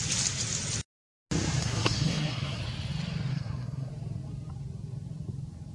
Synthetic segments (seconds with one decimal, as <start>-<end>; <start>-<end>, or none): 1.6-2.6; 3.3-3.9